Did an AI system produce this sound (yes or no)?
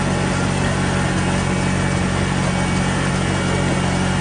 no